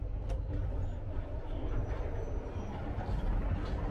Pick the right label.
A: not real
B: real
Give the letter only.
B